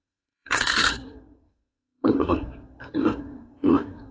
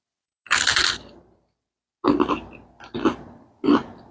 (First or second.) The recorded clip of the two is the second